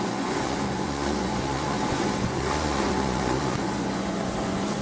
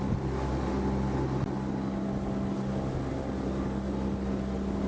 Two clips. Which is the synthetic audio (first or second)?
first